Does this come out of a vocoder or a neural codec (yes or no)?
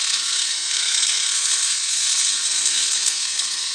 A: yes